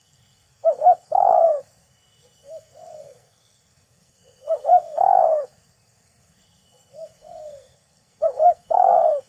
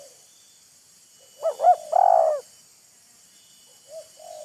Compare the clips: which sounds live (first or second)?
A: second